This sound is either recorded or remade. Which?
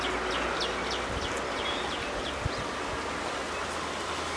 recorded